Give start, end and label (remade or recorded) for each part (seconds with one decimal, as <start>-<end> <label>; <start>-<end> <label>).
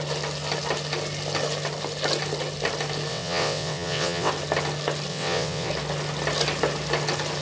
0.0-3.1 recorded; 3.1-4.3 remade; 4.3-5.1 recorded; 5.1-5.7 remade; 5.7-7.4 recorded